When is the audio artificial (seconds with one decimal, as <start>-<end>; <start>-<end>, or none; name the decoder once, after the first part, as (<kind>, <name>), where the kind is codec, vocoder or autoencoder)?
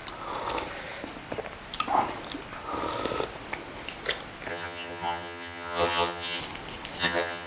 4.5-6.4 (vocoder, HiFi-GAN); 7.0-7.5